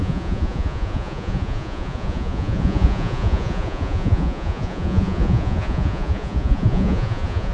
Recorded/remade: remade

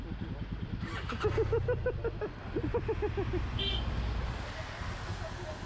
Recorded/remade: recorded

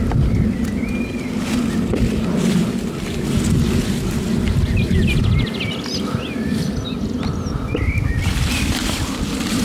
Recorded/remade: recorded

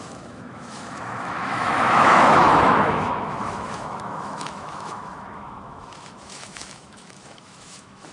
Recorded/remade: remade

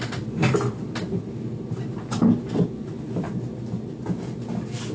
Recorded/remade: recorded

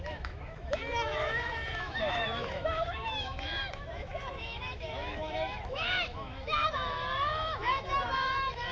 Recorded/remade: remade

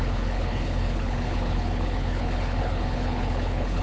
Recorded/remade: remade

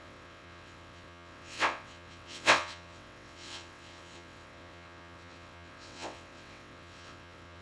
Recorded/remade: remade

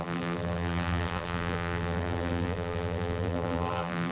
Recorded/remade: remade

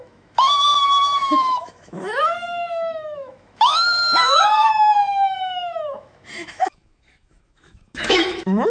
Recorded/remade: remade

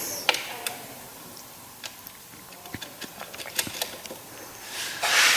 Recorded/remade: remade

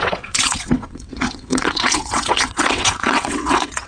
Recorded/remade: remade